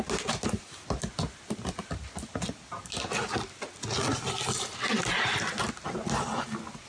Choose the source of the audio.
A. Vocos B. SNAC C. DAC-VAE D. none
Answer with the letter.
D